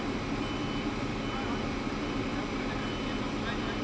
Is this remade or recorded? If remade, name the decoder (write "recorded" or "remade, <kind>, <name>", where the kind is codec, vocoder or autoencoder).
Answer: recorded